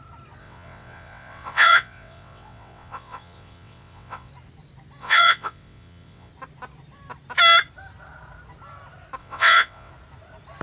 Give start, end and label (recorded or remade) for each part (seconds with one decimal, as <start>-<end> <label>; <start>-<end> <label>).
0.0-0.4 recorded; 0.4-4.3 remade; 4.3-5.0 recorded; 5.0-6.3 remade; 6.3-9.2 recorded; 9.2-9.9 remade; 9.9-10.6 recorded

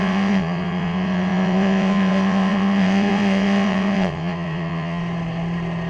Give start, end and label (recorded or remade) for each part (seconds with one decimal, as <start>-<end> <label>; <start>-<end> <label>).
0.0-5.0 remade; 5.0-5.9 recorded